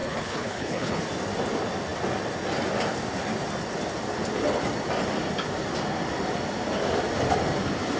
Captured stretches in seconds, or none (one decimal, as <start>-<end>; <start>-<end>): 1.0-8.0